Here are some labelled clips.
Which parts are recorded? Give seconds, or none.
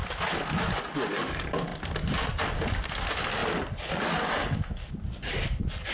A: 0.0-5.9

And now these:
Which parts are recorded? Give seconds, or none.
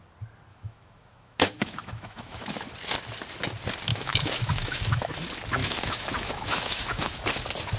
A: 0.0-0.5; 2.7-3.9; 5.1-5.6; 7.2-7.8